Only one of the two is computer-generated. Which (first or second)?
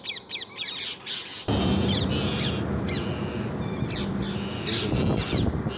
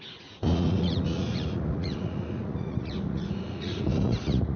second